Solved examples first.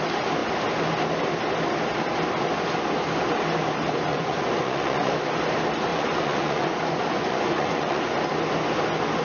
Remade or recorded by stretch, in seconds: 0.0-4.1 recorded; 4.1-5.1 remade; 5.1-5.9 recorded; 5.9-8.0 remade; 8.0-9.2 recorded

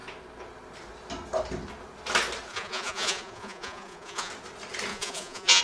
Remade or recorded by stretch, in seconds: 0.0-2.5 recorded; 2.5-4.3 remade; 4.3-4.9 recorded; 4.9-5.6 remade

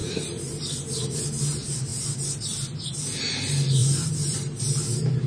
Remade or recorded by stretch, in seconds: 0.0-3.8 recorded; 3.8-4.6 remade; 4.6-5.3 recorded

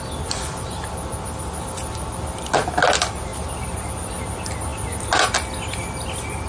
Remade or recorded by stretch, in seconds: 0.0-6.5 recorded

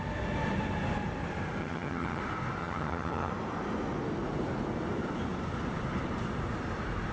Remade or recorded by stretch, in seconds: 0.0-1.6 recorded; 1.6-2.2 remade; 2.2-2.6 recorded; 2.6-3.3 remade; 3.3-7.1 recorded